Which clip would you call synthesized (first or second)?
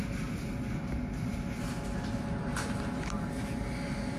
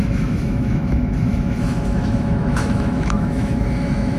second